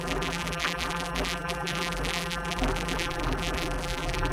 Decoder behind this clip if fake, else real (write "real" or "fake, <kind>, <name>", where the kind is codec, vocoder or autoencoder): fake, vocoder, BigVGAN v2